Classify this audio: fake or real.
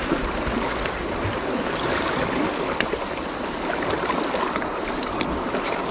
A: real